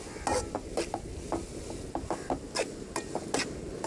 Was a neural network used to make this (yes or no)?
no